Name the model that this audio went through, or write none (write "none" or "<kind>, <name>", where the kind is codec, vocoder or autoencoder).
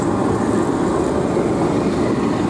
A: none